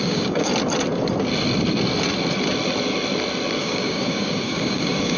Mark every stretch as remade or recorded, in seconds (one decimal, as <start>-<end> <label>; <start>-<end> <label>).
0.0-0.5 remade; 0.5-3.6 recorded; 3.6-5.2 remade